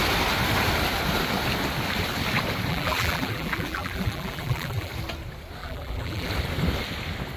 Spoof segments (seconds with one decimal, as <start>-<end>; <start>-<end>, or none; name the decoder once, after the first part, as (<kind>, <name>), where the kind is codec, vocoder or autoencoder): 2.7-4.9 (vocoder, BigVGAN v2); 5.6-6.3

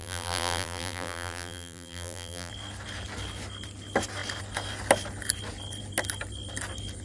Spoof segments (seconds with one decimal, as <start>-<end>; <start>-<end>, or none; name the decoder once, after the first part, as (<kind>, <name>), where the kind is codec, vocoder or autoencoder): 0.0-2.5 (vocoder, BigVGAN v2)

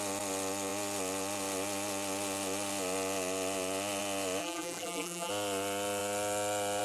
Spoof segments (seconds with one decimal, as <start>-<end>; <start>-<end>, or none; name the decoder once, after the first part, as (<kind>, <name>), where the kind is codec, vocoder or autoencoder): 4.4-5.3 (vocoder, BigVGAN v2)

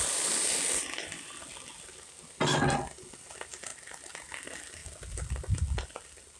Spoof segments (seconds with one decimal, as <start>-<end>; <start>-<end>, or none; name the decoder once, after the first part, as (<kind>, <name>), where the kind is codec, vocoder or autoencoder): none

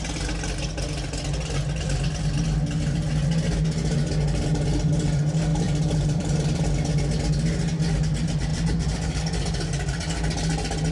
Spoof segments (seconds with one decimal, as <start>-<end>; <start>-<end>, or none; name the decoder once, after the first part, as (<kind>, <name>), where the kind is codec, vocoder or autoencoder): 5.5-6.6 (vocoder, BigVGAN v2); 8.5-9.2

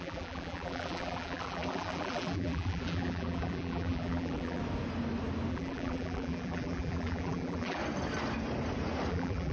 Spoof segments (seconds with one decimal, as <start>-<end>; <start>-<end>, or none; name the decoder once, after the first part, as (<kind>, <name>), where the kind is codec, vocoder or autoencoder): 0.0-4.6 (vocoder, BigVGAN v2); 5.5-7.8; 9.1-9.5

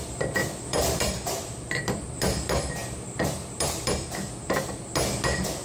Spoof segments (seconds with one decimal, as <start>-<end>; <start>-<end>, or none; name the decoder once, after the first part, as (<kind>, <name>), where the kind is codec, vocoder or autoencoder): 0.0-5.6 (vocoder, BigVGAN v2)

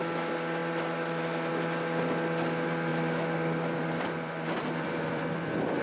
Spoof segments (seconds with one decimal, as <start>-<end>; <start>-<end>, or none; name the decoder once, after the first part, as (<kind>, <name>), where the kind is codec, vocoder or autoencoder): 0.6-1.5 (vocoder, BigVGAN v2); 2.9-5.8